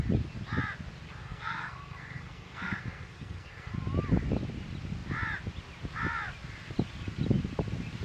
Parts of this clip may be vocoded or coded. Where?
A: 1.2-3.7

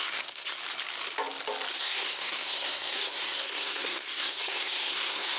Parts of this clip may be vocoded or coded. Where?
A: 0.0-0.6; 1.8-5.4

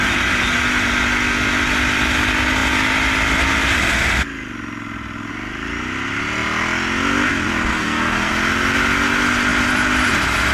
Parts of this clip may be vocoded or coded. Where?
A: 7.7-8.3

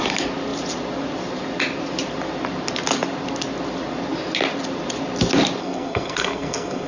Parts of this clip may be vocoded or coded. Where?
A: 5.6-6.9

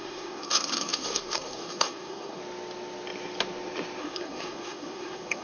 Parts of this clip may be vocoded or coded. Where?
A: 0.0-2.4; 4.0-5.4